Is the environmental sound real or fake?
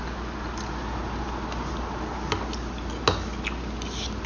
real